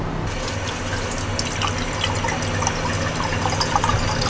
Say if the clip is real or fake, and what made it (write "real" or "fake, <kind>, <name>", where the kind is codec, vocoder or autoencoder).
real